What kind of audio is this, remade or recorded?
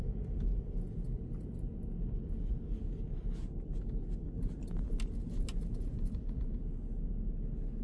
recorded